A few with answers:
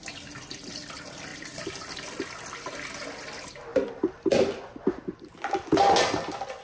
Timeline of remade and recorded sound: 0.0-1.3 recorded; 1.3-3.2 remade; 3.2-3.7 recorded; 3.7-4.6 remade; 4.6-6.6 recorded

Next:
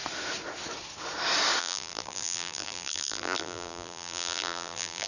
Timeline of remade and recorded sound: 0.0-1.6 recorded; 1.6-5.1 remade

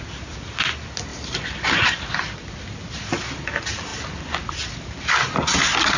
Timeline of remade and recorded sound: 0.0-1.1 recorded; 1.1-2.4 remade; 2.4-6.0 recorded

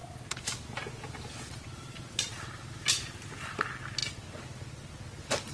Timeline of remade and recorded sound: 0.0-5.5 recorded

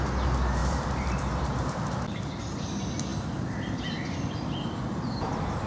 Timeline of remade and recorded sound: 0.0-0.6 recorded; 0.6-2.2 remade; 2.2-5.7 recorded

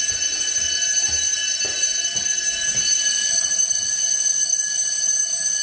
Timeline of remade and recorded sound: 0.0-5.6 recorded

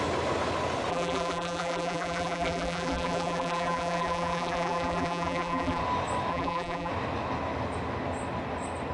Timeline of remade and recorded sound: 0.0-0.9 recorded; 0.9-5.8 remade; 5.8-6.3 recorded; 6.3-6.9 remade; 6.9-8.9 recorded

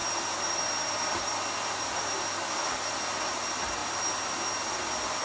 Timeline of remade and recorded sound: 0.0-3.0 remade; 3.0-5.2 recorded